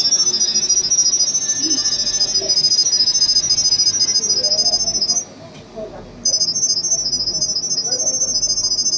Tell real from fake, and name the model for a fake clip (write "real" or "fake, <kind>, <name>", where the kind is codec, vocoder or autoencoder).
real